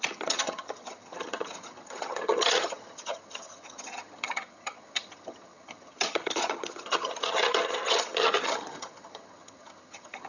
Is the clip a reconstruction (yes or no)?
yes